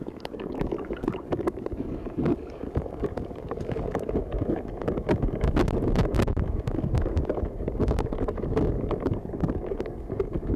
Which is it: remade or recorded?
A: remade